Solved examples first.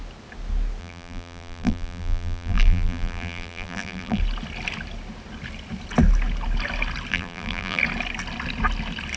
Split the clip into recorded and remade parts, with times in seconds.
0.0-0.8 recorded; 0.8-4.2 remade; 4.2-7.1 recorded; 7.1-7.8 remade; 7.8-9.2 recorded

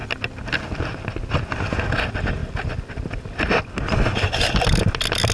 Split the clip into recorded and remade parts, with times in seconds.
0.0-5.3 recorded

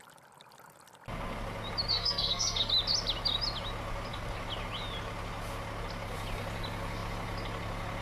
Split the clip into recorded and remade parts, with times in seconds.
0.0-1.9 recorded; 1.9-2.7 remade; 2.7-8.0 recorded

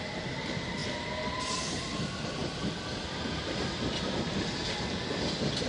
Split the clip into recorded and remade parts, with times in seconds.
0.0-0.8 remade; 0.8-1.7 recorded; 1.7-5.7 remade